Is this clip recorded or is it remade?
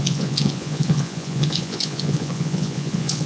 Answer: remade